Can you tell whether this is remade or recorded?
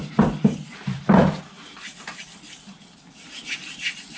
remade